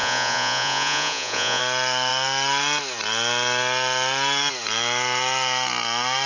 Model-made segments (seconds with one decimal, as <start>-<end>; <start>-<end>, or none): 0.0-1.6